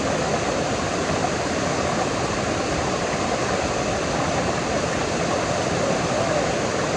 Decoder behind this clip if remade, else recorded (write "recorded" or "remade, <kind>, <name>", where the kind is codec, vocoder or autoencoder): recorded